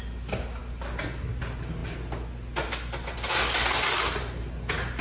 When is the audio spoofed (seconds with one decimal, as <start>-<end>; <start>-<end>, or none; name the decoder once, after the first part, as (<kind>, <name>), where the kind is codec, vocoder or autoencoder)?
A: none